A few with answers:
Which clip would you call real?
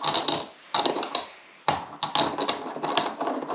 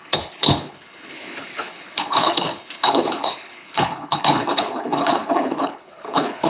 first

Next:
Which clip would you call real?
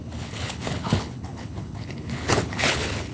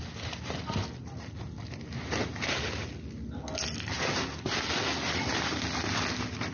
second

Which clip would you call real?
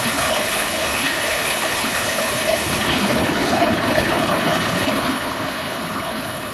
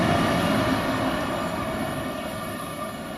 second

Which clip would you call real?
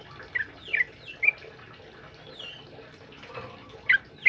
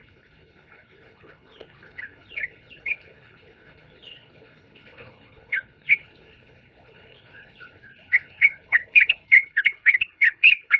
first